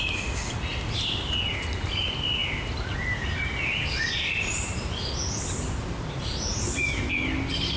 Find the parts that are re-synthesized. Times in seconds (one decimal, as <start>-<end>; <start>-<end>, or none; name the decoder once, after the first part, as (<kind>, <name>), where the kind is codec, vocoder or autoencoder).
0.7-1.4 (vocoder, BigVGAN v2); 2.4-7.1